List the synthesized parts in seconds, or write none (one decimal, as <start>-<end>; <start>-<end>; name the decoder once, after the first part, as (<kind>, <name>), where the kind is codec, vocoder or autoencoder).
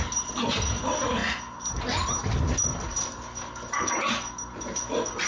none